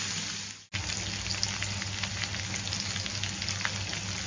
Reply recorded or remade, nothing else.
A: recorded